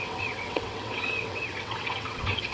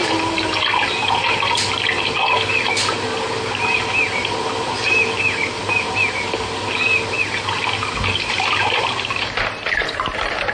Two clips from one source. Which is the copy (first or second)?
first